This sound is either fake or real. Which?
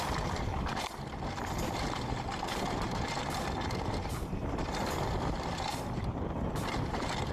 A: real